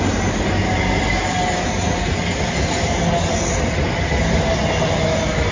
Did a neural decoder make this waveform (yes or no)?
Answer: no